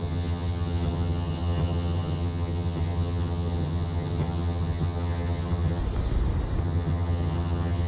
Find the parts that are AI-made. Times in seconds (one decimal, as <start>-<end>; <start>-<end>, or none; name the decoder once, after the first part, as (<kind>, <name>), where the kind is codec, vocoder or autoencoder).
0.0-5.8 (vocoder, HiFi-GAN); 6.6-7.9